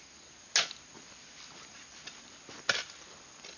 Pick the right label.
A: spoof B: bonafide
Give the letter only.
B